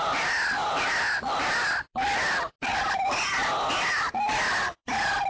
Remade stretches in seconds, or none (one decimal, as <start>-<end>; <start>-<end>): none